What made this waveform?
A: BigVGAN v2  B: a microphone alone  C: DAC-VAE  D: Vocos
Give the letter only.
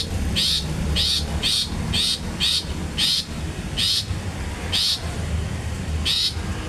B